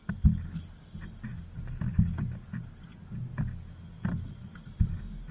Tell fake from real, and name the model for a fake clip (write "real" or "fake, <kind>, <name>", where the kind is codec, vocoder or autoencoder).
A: real